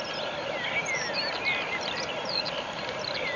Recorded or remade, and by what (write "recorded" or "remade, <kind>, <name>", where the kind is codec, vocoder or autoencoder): recorded